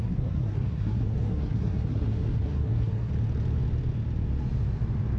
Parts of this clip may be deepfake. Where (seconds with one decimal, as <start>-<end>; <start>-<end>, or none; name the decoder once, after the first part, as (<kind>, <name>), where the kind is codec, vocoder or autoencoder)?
0.0-3.1 (codec, SNAC)